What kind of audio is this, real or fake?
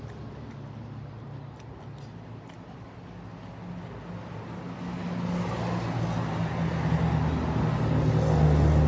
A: real